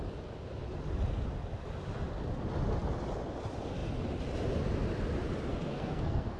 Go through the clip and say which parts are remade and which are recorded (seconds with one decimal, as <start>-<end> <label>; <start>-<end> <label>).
0.0-5.5 recorded; 5.5-6.4 remade